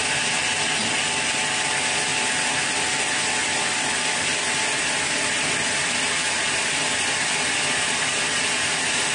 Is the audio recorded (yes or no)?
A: yes